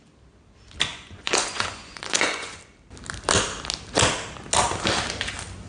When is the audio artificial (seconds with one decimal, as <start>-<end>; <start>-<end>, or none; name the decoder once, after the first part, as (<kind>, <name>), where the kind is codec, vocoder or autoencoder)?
0.9-2.6 (vocoder, Vocos)